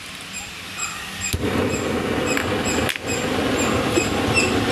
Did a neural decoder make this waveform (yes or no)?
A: no